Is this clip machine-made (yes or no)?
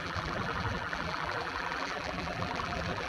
yes